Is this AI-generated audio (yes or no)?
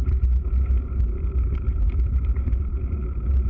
yes